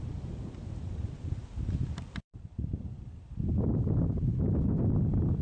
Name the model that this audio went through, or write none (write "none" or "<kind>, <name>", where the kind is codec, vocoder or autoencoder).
vocoder, BigVGAN v2